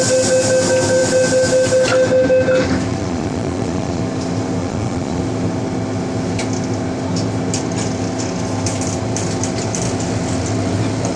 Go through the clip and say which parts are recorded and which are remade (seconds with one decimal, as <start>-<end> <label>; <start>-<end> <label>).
0.0-2.9 recorded; 2.9-4.0 remade; 4.0-4.6 recorded; 4.6-5.2 remade; 5.2-11.2 recorded